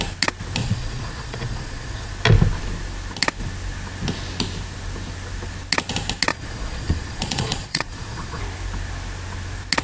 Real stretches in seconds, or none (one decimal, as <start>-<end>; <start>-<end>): 0.0-0.6; 2.1-6.3; 8.4-9.8